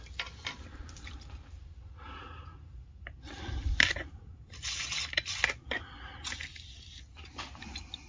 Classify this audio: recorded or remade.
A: recorded